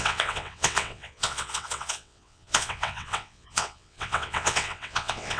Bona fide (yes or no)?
no